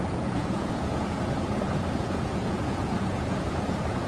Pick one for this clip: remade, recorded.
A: remade